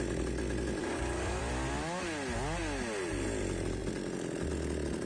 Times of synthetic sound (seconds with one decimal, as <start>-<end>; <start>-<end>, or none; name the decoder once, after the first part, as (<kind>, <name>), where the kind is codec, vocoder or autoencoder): 0.8-1.4 (codec, DAC)